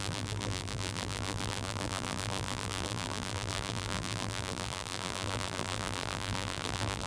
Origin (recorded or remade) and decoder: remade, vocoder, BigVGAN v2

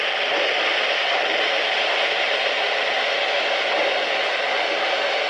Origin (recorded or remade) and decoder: recorded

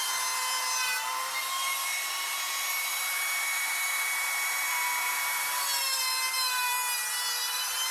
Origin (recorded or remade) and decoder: remade, vocoder, BigVGAN v2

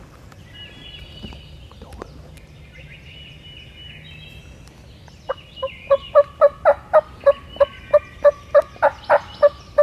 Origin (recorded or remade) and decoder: recorded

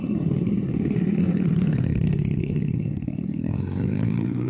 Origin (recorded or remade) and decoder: remade, codec, SNAC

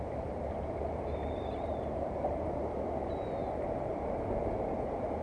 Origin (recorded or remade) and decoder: remade, vocoder, BigVGAN v2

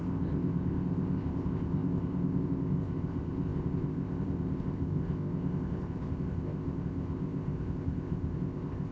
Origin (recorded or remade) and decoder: remade, codec, ZipCodec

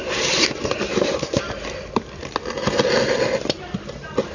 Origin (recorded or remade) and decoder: recorded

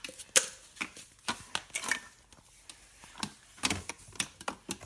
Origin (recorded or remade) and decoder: recorded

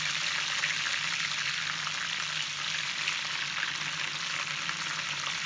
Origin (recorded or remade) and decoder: recorded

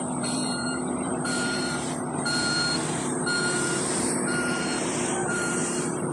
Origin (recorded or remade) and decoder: remade, vocoder, BigVGAN v2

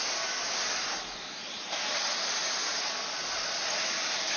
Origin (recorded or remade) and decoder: recorded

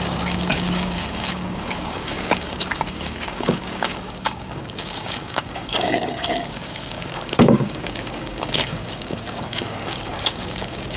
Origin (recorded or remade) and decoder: remade, codec, DAC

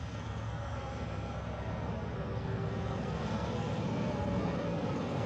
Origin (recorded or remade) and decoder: remade, codec, SNAC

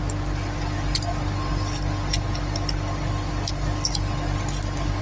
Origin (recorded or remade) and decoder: recorded